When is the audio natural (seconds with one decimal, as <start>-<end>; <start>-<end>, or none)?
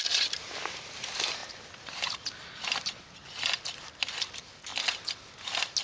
0.0-5.8